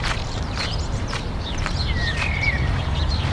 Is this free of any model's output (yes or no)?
no